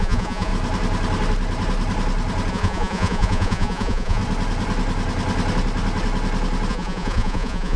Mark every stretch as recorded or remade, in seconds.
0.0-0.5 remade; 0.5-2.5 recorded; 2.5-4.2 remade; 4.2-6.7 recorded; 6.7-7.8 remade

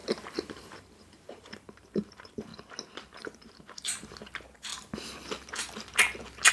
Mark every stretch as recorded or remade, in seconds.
0.0-2.5 remade; 2.5-3.1 recorded; 3.1-4.7 remade; 4.7-6.5 recorded

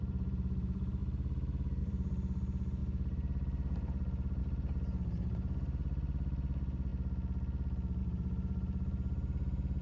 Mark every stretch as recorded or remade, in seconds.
0.0-1.0 remade; 1.0-1.8 recorded; 1.8-6.9 remade; 6.9-8.0 recorded; 8.0-9.8 remade

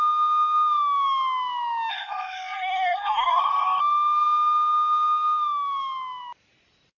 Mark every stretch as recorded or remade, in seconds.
0.0-1.9 recorded; 1.9-3.8 remade; 3.8-7.0 recorded